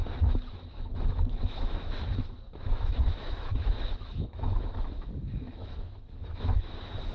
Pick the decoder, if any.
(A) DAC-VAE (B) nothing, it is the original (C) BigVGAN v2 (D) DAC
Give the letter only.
A